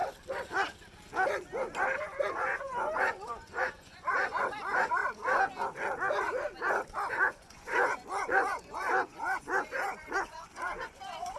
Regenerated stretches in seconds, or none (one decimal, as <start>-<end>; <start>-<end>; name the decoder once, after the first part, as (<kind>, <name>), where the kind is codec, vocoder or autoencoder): 2.0-5.0 (vocoder, Vocos); 7.1-11.4